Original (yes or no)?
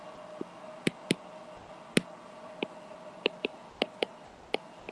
yes